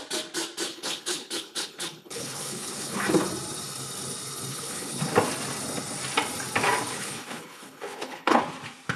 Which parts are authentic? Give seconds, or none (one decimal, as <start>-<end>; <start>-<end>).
0.0-0.7; 3.0-4.5; 5.0-6.9; 8.4-9.0